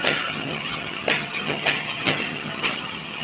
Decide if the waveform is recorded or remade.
remade